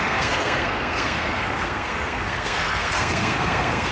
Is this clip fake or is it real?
fake